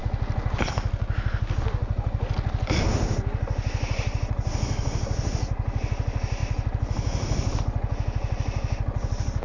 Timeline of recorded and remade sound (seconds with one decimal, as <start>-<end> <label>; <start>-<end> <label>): 0.0-9.4 recorded